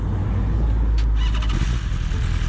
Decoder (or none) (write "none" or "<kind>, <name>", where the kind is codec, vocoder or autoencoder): none